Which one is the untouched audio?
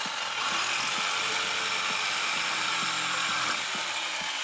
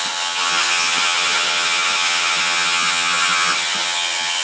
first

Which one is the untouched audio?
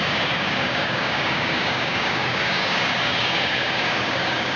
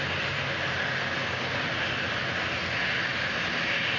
second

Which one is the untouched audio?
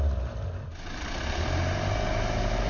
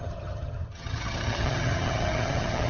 first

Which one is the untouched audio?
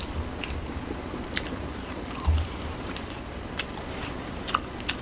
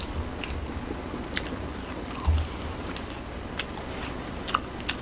second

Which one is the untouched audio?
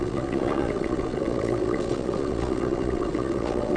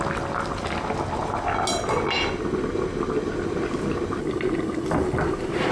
second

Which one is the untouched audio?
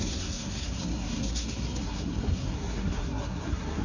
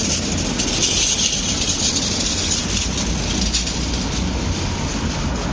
second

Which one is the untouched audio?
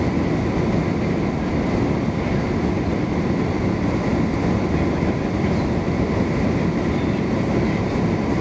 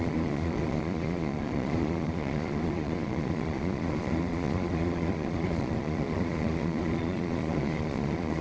first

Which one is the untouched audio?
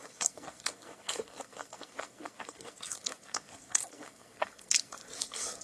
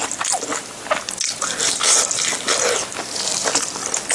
second